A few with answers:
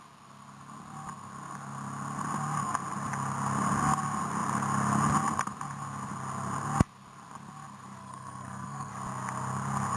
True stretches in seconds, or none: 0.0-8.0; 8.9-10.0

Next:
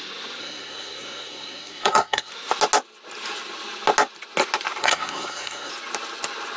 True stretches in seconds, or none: 0.0-0.4; 2.3-4.8; 5.7-6.6

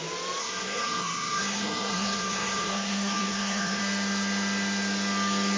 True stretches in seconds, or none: 0.0-0.4; 3.8-5.6